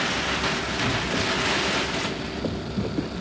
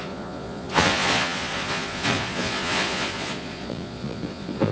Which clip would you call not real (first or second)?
second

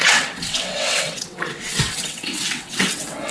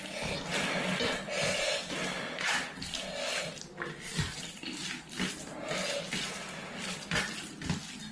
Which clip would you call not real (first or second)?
first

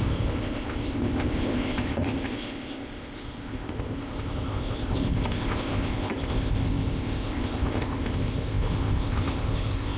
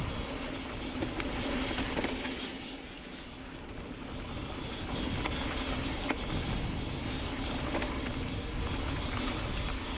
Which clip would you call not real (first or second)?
first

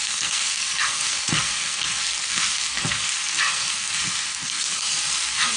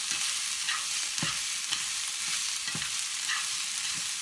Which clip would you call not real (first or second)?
first